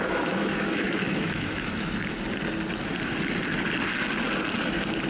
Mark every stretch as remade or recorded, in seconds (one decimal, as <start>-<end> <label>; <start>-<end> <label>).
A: 0.0-1.9 remade; 1.9-5.1 recorded